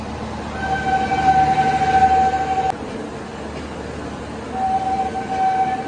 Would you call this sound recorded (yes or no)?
yes